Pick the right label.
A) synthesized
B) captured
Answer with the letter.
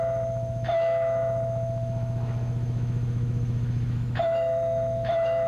A